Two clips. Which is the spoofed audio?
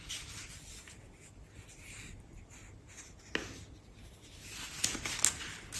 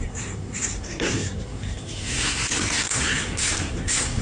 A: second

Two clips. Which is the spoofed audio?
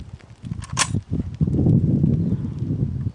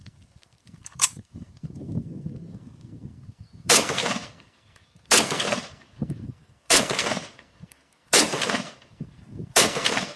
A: second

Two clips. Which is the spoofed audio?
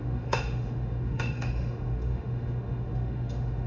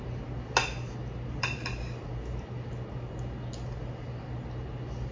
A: first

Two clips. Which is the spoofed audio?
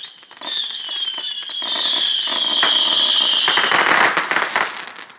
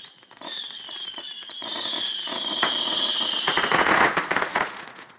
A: second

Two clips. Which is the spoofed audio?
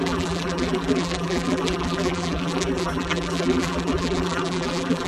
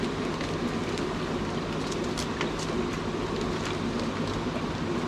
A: first